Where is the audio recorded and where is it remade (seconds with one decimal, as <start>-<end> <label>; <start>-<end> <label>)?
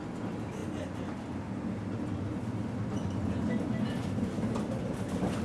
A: 0.0-5.4 recorded